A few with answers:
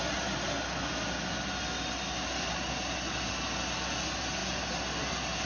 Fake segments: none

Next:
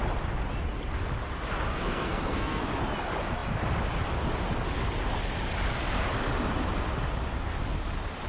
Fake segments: 1.7-2.6 (codec, SNAC)

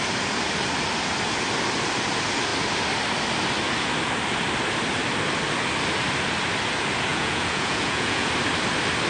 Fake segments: 7.1-8.3 (vocoder, Vocos)

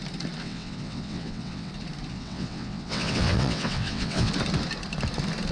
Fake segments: 0.4-1.7 (vocoder, WaveNeXt); 2.1-4.3

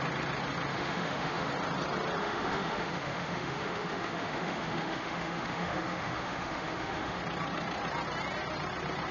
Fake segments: 0.7-1.5 (autoencoder, DAC-VAE); 2.2-7.2